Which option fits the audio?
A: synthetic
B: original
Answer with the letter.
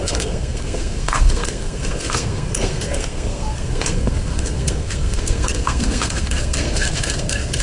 A